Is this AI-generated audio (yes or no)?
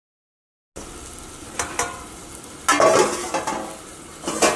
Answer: no